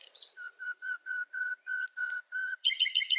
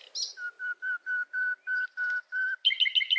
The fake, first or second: first